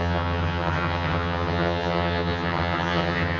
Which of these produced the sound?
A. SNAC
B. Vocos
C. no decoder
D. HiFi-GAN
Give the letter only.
D